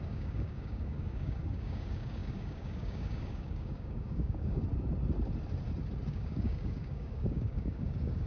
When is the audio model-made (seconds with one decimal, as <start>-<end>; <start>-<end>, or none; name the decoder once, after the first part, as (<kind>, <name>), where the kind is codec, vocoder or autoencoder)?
0.0-4.6 (codec, DAC); 6.1-8.3